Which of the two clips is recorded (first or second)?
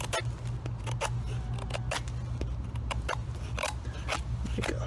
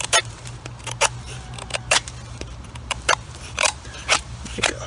first